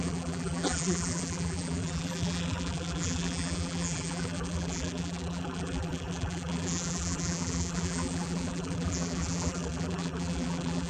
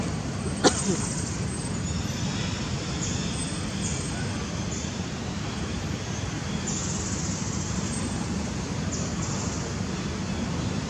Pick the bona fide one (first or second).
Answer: second